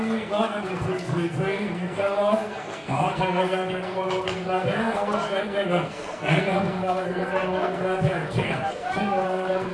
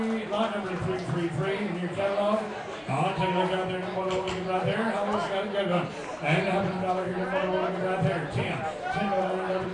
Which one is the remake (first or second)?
first